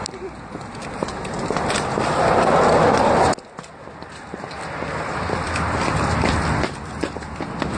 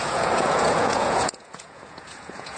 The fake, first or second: second